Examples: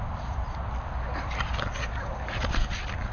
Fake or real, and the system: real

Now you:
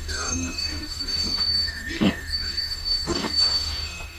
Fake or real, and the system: fake, codec, DAC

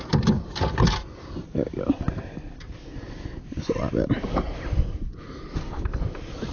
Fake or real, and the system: fake, vocoder, BigVGAN v2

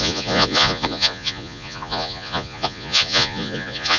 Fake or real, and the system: fake, vocoder, Vocos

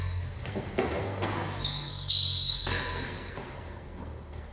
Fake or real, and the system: fake, codec, SNAC